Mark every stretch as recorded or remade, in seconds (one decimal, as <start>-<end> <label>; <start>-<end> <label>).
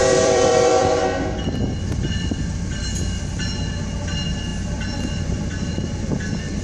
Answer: 0.0-0.7 remade; 0.7-4.5 recorded; 4.5-6.6 remade